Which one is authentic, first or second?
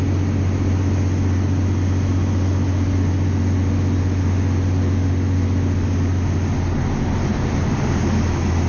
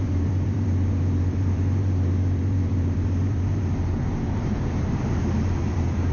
first